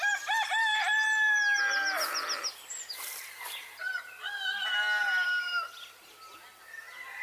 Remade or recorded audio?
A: recorded